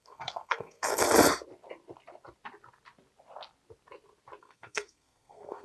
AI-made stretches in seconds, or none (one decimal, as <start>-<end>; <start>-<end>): 0.0-1.0; 4.4-5.6